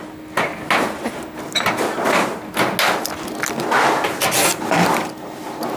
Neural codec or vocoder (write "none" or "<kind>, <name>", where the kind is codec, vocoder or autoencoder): none